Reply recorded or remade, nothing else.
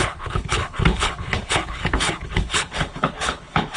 remade